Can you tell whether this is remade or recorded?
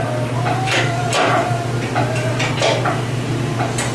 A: recorded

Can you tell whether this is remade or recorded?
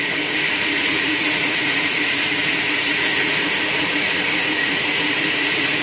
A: remade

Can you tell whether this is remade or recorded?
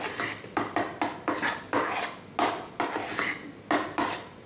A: recorded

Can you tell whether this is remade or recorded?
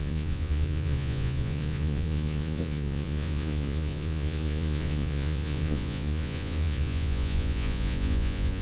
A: remade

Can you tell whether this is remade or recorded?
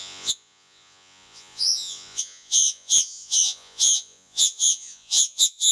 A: remade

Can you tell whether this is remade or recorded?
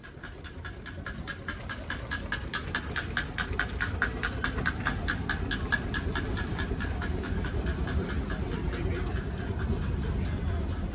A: recorded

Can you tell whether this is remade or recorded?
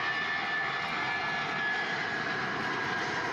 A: recorded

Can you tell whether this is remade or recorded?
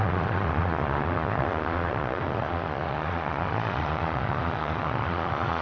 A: remade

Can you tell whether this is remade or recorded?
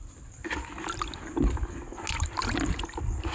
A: recorded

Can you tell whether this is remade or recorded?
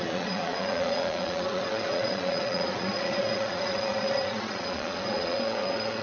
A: remade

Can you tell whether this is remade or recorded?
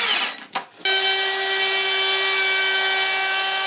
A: recorded